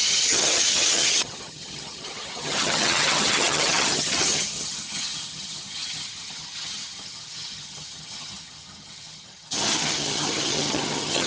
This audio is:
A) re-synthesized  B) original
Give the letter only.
A